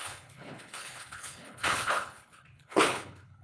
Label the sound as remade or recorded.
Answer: remade